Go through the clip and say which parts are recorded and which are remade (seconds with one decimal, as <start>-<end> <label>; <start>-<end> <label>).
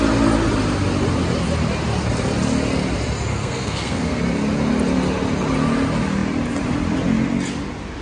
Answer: 0.0-3.3 recorded; 3.3-4.2 remade; 4.2-8.0 recorded